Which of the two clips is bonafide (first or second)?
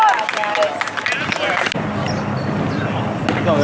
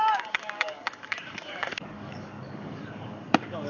first